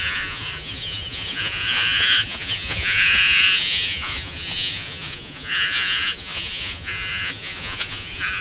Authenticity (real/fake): fake